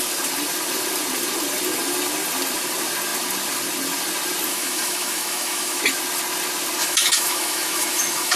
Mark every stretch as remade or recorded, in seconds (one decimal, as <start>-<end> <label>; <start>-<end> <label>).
0.0-4.5 recorded; 4.5-5.8 remade; 5.8-6.8 recorded; 6.8-8.4 remade